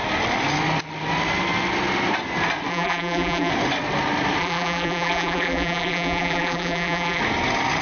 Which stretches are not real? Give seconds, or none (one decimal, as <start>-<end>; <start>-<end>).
2.7-3.5; 4.4-7.2